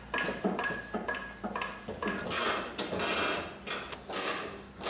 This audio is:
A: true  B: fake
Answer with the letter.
A